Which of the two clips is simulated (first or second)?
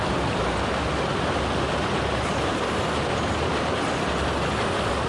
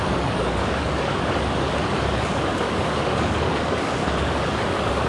second